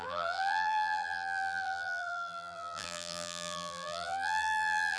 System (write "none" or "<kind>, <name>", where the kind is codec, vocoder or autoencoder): vocoder, BigVGAN v2